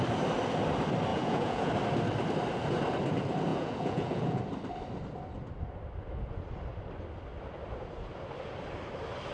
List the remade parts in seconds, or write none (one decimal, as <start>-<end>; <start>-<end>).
1.1-1.7; 3.5-4.4